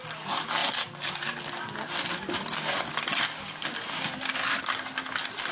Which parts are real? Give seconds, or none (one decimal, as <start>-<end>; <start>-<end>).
0.0-5.5